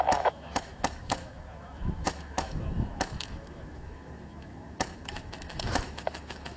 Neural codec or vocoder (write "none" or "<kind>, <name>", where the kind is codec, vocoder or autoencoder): autoencoder, DAC-VAE